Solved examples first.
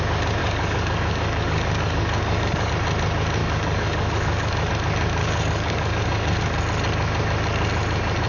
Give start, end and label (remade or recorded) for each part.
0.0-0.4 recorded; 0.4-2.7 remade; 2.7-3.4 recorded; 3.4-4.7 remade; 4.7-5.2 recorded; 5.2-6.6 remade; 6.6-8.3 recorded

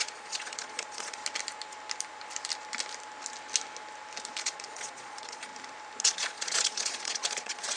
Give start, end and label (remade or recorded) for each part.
0.0-1.2 remade; 1.2-4.4 recorded; 4.4-5.5 remade; 5.5-6.0 recorded; 6.0-7.8 remade

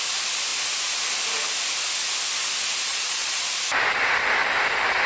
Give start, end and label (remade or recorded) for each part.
0.0-2.9 recorded; 2.9-3.4 remade; 3.4-5.1 recorded

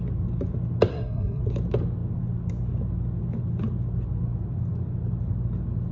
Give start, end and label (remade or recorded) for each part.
0.0-0.9 recorded; 0.9-1.4 remade; 1.4-5.9 recorded

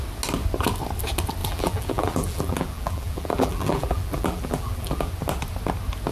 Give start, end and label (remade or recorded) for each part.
0.0-1.4 recorded; 1.4-5.1 remade; 5.1-6.1 recorded